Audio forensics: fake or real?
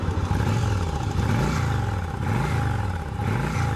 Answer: real